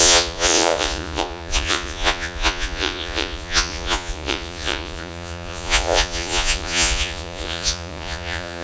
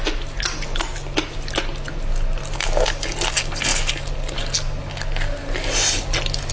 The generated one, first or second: first